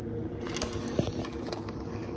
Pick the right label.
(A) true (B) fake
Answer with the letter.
A